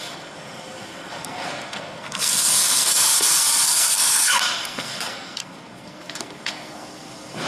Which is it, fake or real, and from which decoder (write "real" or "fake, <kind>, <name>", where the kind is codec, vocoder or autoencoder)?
fake, codec, SNAC